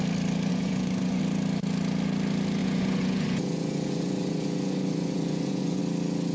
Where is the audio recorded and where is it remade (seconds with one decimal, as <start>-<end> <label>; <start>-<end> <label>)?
0.0-0.5 recorded; 0.5-1.2 remade; 1.2-2.6 recorded; 2.6-5.8 remade; 5.8-6.3 recorded